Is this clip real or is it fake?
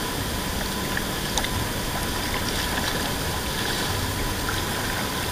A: real